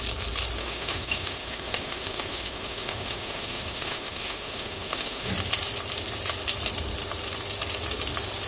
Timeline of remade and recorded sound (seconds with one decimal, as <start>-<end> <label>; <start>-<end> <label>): 0.0-0.6 recorded; 0.6-5.3 remade; 5.3-8.5 recorded